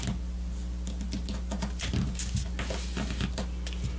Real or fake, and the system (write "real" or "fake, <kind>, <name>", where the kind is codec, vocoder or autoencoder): real